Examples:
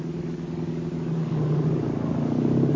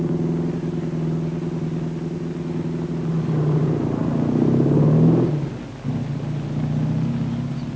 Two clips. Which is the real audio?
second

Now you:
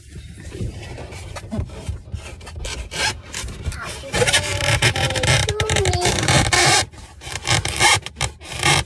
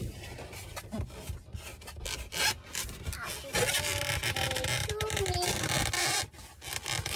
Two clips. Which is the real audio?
second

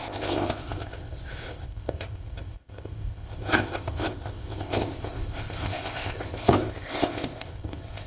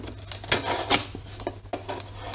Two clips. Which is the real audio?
second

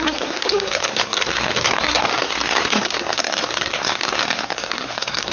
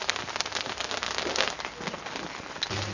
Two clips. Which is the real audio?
second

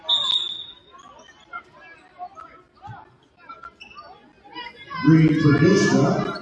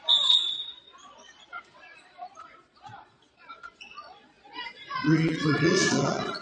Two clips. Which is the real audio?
first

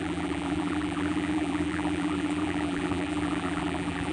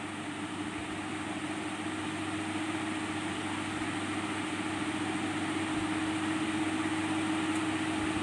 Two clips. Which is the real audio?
second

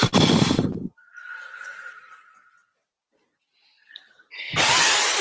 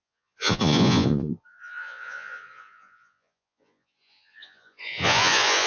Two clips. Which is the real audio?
first